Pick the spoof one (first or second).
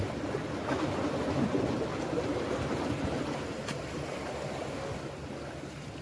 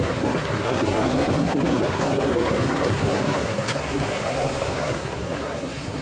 second